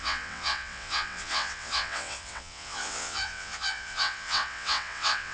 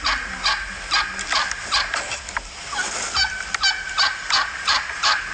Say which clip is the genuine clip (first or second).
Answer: second